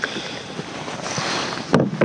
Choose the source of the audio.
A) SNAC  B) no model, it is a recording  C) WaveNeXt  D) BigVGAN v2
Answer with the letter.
B